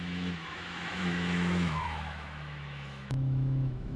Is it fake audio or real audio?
fake